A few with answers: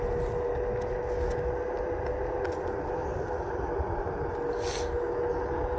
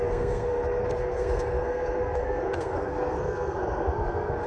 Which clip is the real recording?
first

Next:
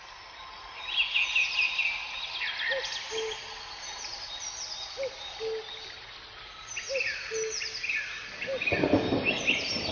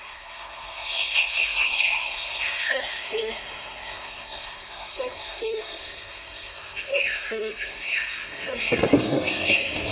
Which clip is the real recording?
first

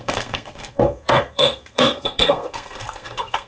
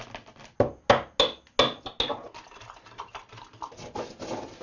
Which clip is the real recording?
second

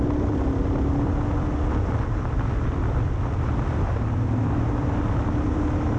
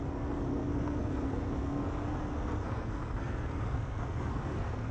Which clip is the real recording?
first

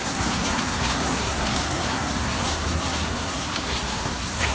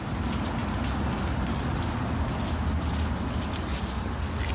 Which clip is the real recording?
second